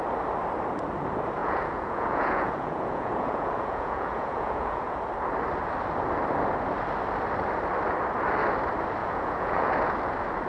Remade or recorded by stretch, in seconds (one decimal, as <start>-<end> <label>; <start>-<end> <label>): 0.0-1.4 recorded; 1.4-5.0 remade; 5.0-9.0 recorded; 9.0-9.7 remade; 9.7-10.5 recorded